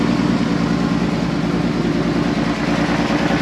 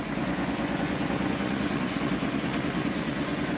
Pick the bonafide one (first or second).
first